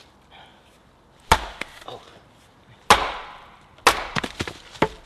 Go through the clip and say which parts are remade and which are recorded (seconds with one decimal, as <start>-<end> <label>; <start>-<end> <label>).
0.0-5.1 recorded